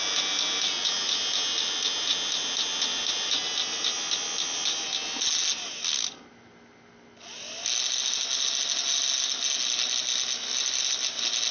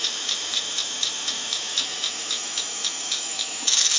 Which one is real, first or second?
first